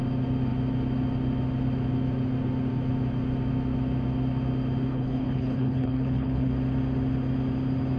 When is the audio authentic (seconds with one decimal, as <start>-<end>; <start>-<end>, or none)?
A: 0.0-4.9; 6.5-8.0

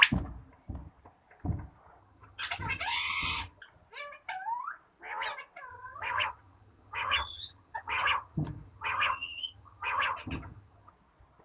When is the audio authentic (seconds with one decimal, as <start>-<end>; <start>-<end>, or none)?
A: 0.0-2.0; 3.6-5.7; 10.9-11.4

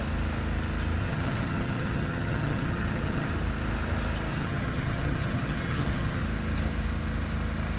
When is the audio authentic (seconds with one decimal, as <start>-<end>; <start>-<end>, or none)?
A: 0.0-1.0; 3.3-4.3; 6.2-7.8

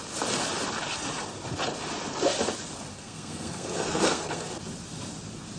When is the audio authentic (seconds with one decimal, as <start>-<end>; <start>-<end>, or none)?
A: 0.0-2.9; 4.5-5.6

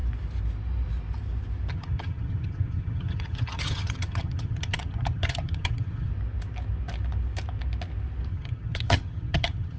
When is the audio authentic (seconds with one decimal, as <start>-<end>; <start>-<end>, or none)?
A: 0.0-1.7; 6.1-8.3

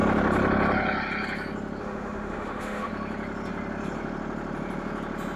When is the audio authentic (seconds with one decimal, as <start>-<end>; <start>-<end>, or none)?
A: 0.0-1.8; 2.9-5.4

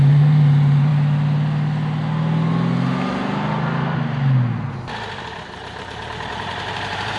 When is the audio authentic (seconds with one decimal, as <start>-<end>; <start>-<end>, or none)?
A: 0.9-5.2